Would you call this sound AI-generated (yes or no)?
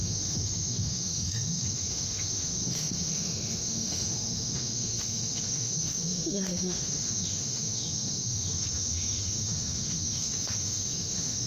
yes